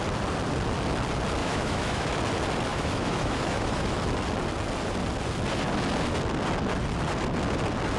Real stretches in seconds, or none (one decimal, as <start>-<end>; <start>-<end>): 0.0-1.4; 2.1-2.7; 4.0-8.0